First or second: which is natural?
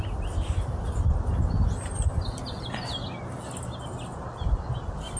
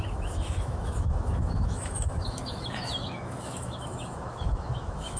first